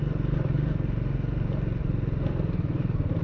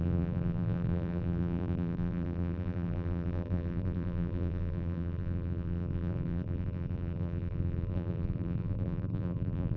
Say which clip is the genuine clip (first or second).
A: first